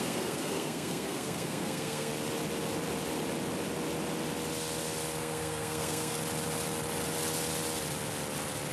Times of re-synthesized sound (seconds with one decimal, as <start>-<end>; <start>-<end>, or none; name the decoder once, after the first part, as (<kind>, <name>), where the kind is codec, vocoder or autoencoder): 0.0-2.1 (codec, SNAC); 5.2-6.2